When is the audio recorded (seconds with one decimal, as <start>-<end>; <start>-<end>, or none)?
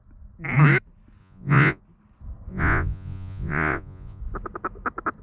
0.0-1.2; 1.8-2.5; 4.2-5.2